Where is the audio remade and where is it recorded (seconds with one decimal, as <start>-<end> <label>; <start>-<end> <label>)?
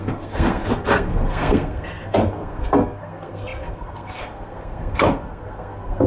0.0-6.1 remade